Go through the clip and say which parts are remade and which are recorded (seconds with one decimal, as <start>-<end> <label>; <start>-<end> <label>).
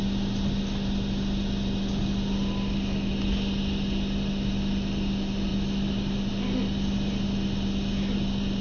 0.0-8.6 recorded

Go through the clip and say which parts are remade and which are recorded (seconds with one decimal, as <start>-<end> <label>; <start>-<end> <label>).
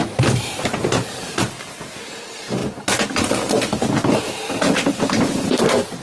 0.0-6.0 remade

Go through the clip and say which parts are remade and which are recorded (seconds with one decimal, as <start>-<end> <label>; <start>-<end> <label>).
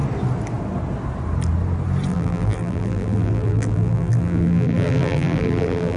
0.0-2.1 recorded; 2.1-6.0 remade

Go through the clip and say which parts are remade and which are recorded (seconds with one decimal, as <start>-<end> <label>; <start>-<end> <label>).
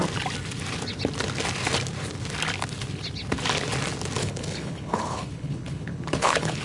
0.0-4.2 recorded; 4.2-6.6 remade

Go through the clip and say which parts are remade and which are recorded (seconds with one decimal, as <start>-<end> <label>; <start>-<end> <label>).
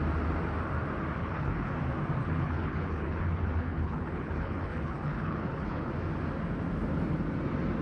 0.0-1.2 recorded; 1.2-1.7 remade; 1.7-2.2 recorded; 2.2-5.9 remade; 5.9-7.8 recorded